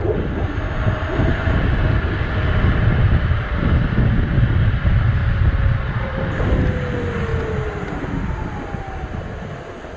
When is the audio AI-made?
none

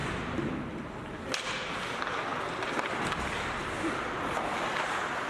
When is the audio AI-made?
none